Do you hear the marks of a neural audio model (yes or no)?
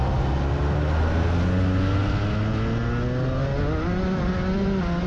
no